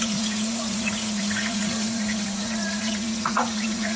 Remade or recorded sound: remade